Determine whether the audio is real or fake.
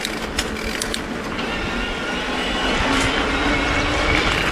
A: real